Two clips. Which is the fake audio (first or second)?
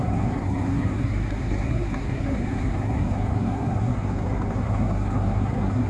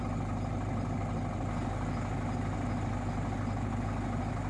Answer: first